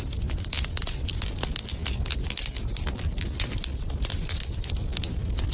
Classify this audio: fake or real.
real